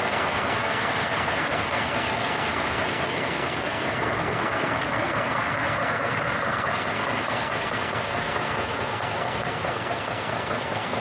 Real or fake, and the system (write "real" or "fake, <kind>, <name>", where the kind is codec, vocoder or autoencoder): fake, codec, SNAC